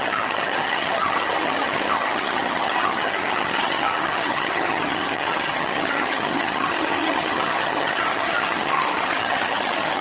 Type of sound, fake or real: fake